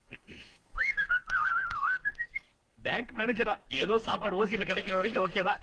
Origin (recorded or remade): remade